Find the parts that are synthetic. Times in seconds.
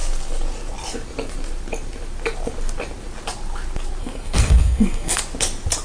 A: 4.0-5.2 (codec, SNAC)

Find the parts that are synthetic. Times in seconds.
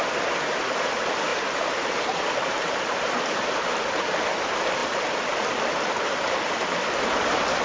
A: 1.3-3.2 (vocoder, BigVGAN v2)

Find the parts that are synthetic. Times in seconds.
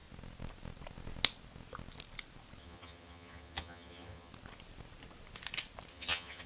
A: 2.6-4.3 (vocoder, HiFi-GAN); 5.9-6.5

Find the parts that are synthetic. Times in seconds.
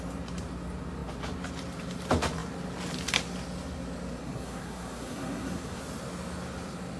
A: 4.2-5.8 (codec, SNAC)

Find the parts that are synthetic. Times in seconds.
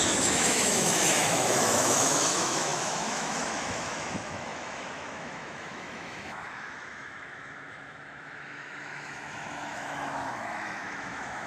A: 0.0-11.5 (autoencoder, DAC-VAE)